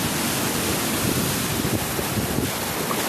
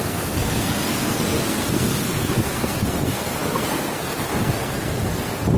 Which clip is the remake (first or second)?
second